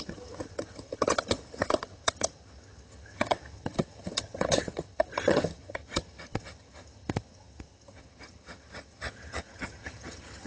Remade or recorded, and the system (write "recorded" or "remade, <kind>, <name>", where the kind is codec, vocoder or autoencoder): remade, vocoder, HiFi-GAN